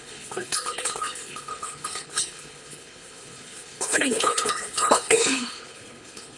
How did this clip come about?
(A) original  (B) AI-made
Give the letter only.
B